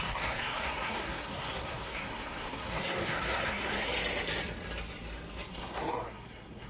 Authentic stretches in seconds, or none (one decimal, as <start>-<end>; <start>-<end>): 3.9-5.5